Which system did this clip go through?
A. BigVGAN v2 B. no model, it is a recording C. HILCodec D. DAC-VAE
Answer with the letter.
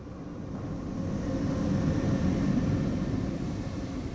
B